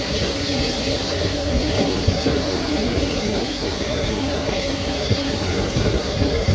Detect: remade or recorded remade